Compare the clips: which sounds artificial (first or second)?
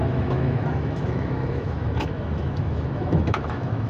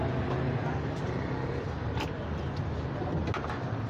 first